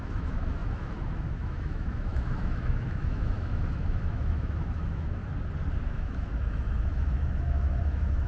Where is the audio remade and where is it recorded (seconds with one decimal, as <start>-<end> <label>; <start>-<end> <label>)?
0.0-5.2 remade; 5.2-5.8 recorded; 5.8-8.3 remade